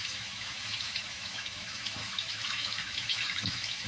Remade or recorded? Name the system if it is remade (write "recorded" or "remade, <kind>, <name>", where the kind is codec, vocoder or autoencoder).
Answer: remade, autoencoder, DAC-VAE